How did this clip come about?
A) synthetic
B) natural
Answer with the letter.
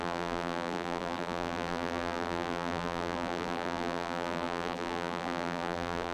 A